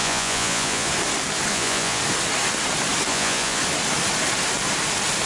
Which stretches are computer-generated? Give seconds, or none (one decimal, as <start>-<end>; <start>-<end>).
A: 0.0-0.9; 1.5-2.0; 3.1-3.6